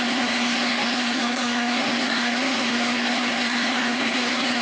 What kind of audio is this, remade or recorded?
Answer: remade